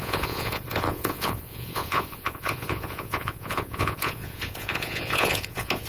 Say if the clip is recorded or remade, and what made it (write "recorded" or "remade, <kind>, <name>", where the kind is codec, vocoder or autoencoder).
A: remade, vocoder, Vocos